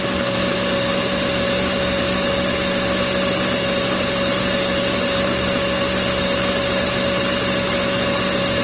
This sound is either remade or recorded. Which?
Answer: recorded